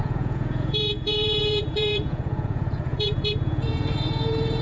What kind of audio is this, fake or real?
fake